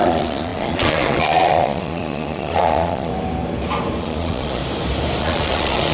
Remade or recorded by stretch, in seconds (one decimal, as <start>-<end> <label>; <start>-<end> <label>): 0.0-3.1 remade; 3.1-4.0 recorded; 4.0-4.6 remade; 4.6-5.2 recorded; 5.2-5.9 remade